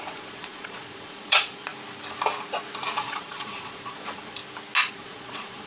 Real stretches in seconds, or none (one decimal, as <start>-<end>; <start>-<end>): 1.7-3.0; 4.4-4.9